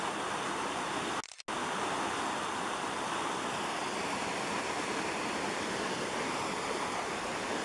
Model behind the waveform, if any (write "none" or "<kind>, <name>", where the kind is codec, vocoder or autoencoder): none